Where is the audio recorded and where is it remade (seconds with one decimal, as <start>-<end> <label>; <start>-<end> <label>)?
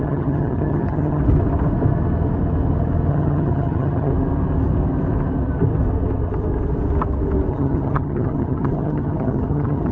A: 0.0-1.2 remade; 1.2-3.1 recorded; 3.1-4.1 remade; 4.1-7.5 recorded; 7.5-9.9 remade